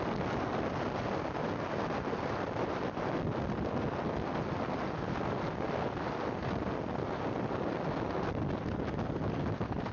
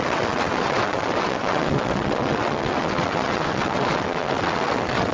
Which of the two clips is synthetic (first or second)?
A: second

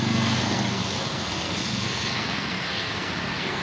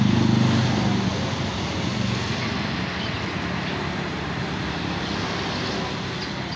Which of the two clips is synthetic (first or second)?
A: first